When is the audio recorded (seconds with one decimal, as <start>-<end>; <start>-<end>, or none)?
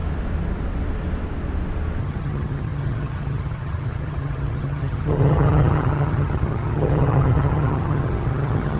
0.0-2.0